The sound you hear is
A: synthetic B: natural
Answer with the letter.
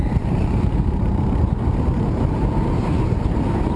A